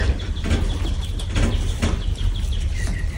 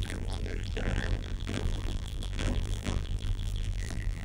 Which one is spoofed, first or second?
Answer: second